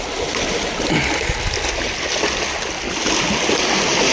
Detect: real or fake real